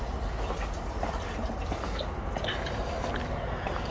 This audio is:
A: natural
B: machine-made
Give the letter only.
A